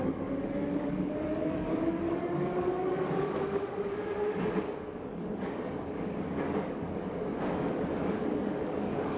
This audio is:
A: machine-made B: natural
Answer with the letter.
A